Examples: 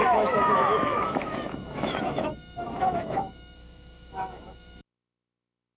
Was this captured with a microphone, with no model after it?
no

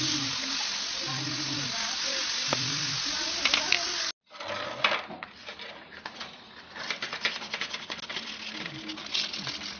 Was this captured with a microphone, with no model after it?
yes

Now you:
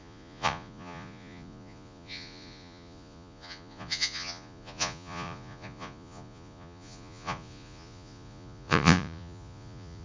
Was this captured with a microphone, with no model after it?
no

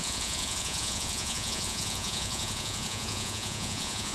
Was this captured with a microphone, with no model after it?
no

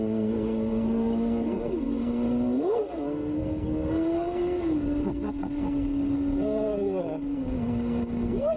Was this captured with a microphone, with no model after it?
no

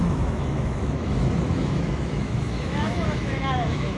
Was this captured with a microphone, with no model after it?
no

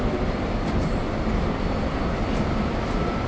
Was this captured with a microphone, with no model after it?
yes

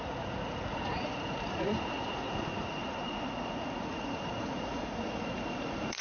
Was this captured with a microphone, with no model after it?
no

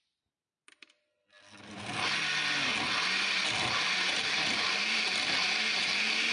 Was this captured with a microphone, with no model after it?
yes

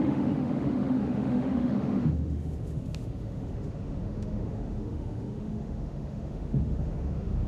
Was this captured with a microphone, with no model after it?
no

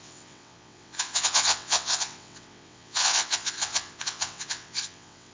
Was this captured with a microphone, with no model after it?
no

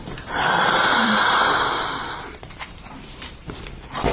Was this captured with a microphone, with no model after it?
no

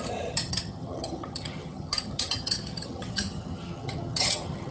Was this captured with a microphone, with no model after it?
no